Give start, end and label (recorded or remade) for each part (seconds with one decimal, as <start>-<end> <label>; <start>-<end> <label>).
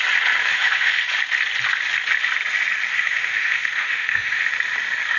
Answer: 0.0-0.5 recorded; 0.5-1.0 remade; 1.0-2.9 recorded; 2.9-4.5 remade; 4.5-5.2 recorded